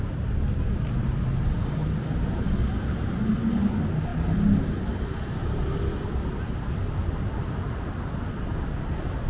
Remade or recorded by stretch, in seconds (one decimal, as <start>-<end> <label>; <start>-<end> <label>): 0.0-9.3 recorded

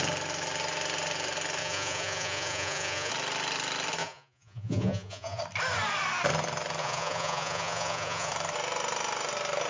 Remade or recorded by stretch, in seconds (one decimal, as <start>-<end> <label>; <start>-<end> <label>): 0.0-1.6 recorded; 1.6-3.1 remade; 3.1-4.0 recorded; 4.0-5.4 remade; 5.4-6.8 recorded; 6.8-8.3 remade; 8.3-9.7 recorded